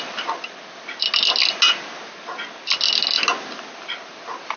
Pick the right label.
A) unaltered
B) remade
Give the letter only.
A